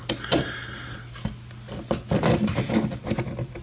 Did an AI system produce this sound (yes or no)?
no